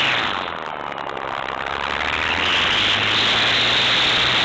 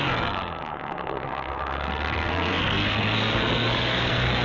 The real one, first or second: first